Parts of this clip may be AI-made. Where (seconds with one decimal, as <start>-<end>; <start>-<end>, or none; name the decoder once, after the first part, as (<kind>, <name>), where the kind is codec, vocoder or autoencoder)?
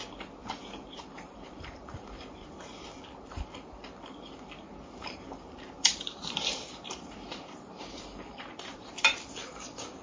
0.4-2.5 (vocoder, BigVGAN v2); 5.0-9.0